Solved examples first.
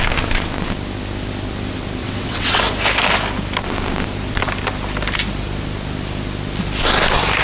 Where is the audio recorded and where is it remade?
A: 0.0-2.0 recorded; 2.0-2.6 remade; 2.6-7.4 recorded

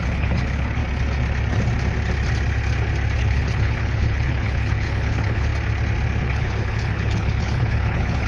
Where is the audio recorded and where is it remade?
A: 0.0-0.8 remade; 0.8-3.2 recorded; 3.2-5.5 remade; 5.5-6.2 recorded; 6.2-8.3 remade

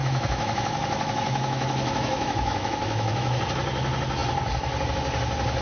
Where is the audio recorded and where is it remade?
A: 0.0-3.4 remade; 3.4-5.6 recorded